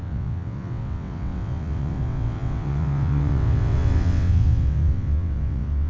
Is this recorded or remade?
remade